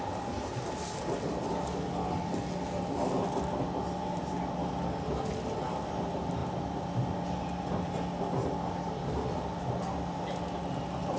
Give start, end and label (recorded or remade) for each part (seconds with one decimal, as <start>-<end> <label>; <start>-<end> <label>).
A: 0.0-11.2 recorded